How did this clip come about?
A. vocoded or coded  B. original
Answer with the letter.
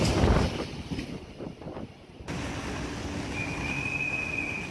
B